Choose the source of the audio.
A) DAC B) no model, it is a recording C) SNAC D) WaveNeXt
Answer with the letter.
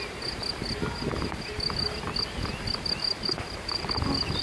B